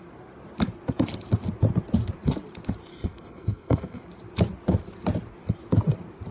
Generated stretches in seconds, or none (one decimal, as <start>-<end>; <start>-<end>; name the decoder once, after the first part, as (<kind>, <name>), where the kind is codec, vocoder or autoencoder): 2.9-4.0 (codec, SNAC)